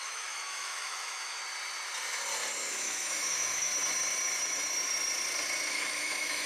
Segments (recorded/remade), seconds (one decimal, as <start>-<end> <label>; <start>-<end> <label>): 0.0-1.4 remade; 1.4-2.7 recorded; 2.7-3.7 remade; 3.7-5.7 recorded; 5.7-6.5 remade